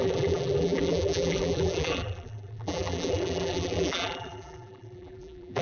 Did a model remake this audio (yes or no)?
yes